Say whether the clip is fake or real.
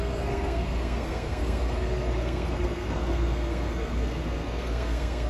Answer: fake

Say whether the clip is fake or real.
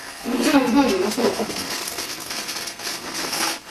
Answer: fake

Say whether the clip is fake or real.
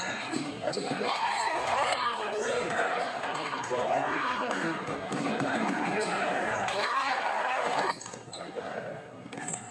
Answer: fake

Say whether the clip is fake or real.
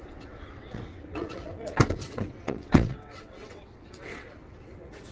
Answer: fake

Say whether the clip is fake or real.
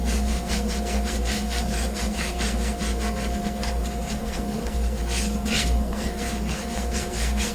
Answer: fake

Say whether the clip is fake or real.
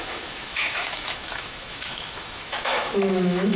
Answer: fake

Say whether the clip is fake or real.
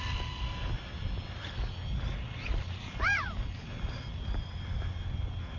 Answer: real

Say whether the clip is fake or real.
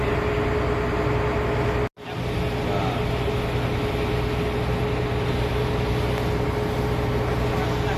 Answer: real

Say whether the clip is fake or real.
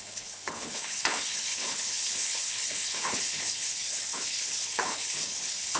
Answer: fake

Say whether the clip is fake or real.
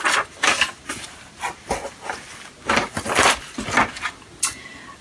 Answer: real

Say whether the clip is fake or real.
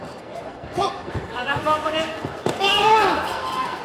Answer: fake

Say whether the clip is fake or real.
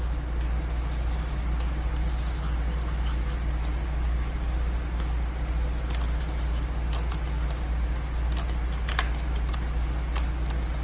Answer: fake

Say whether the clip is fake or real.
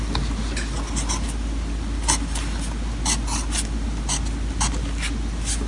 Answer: real